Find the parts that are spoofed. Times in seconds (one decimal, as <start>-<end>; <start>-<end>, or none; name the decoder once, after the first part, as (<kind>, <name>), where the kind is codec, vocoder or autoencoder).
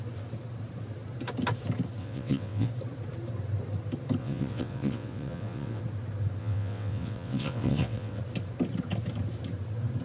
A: 2.0-2.7 (vocoder, WaveNeXt); 4.2-5.8; 6.4-8.2